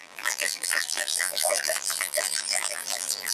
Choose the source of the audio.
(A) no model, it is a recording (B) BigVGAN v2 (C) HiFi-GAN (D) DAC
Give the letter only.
B